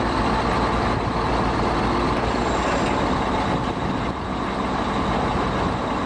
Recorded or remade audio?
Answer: recorded